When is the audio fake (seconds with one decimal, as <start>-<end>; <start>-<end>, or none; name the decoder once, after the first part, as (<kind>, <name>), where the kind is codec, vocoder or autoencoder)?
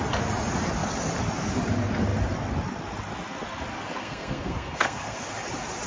4.0-5.3 (codec, SNAC)